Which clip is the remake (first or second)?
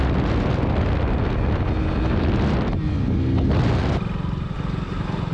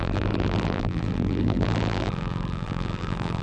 second